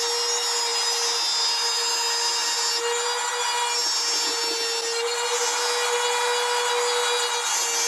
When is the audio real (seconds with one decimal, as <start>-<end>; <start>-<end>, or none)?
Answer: 0.0-7.9